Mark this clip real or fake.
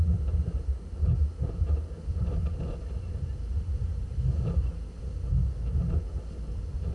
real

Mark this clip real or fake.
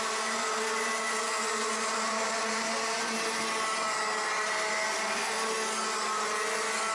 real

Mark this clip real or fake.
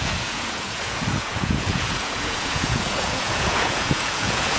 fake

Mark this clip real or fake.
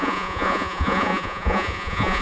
fake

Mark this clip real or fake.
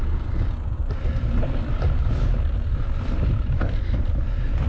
real